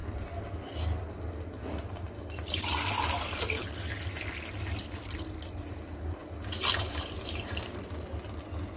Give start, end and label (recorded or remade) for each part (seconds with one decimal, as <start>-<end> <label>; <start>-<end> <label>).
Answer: 0.0-8.8 recorded